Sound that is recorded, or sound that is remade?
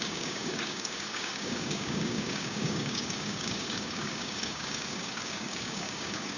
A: remade